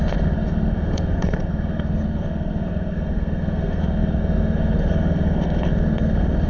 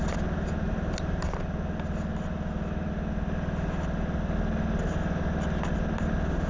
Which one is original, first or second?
second